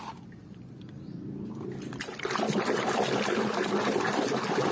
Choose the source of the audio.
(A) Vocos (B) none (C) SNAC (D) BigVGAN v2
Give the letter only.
B